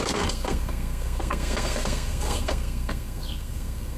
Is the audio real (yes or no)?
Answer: no